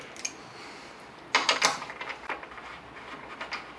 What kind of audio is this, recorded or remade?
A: recorded